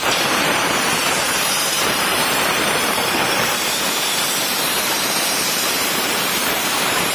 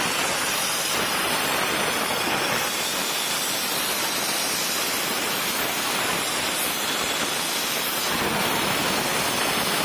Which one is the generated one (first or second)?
first